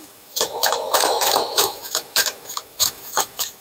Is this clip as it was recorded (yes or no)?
no